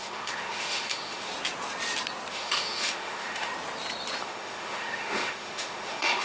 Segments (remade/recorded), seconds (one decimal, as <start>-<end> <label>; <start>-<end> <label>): 0.0-1.3 remade; 1.3-2.3 recorded; 2.3-3.5 remade; 3.5-4.2 recorded; 4.2-6.2 remade